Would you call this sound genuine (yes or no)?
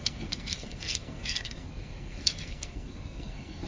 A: no